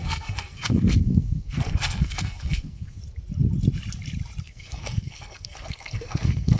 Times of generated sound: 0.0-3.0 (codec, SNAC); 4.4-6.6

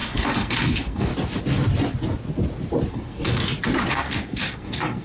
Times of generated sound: 0.0-1.1 (codec, SNAC); 2.9-3.4; 3.9-5.0